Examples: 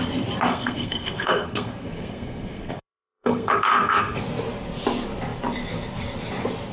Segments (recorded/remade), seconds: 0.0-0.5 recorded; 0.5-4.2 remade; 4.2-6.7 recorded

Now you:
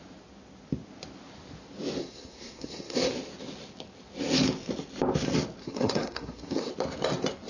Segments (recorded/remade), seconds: 0.0-2.0 recorded; 2.0-3.1 remade; 3.1-5.6 recorded; 5.6-6.7 remade; 6.7-7.5 recorded

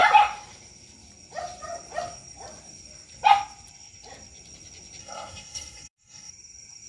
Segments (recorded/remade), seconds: 0.0-5.0 recorded; 5.0-6.3 remade; 6.3-6.9 recorded

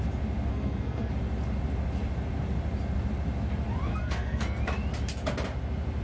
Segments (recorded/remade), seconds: 0.0-0.5 recorded; 0.5-1.1 remade; 1.1-3.9 recorded; 3.9-4.6 remade; 4.6-6.0 recorded

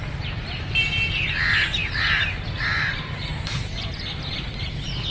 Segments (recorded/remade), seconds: 0.0-5.1 recorded